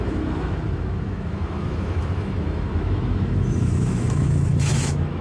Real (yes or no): no